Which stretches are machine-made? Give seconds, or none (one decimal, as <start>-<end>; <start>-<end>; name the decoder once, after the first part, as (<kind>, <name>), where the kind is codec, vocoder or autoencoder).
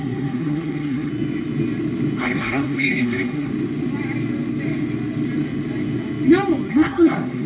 0.0-1.1 (codec, SNAC); 2.2-3.5; 6.7-7.5